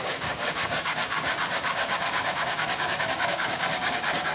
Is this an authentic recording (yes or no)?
no